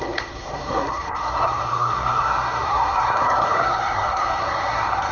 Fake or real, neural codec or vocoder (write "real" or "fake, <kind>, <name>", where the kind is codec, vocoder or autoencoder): fake, codec, SNAC